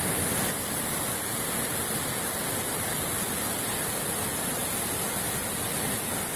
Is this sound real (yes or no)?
yes